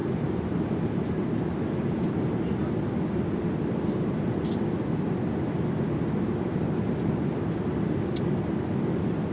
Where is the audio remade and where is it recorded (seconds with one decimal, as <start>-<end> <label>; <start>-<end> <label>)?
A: 0.0-9.3 recorded